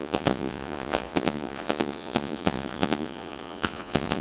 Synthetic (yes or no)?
yes